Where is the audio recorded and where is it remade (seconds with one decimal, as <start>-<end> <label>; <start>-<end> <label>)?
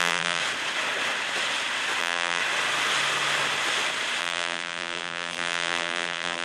0.0-0.4 remade; 0.4-2.0 recorded; 2.0-2.4 remade; 2.4-4.2 recorded; 4.2-6.4 remade